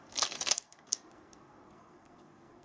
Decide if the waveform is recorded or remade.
remade